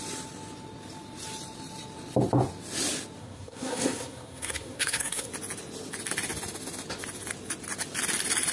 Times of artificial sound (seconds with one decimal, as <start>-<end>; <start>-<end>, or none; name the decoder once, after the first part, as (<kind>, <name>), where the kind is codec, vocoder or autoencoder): 3.2-5.3 (codec, SNAC)